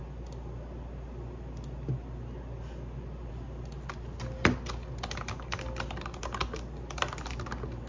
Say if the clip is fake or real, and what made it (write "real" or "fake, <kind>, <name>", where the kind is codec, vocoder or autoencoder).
real